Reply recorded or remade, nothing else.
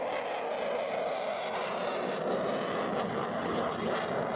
recorded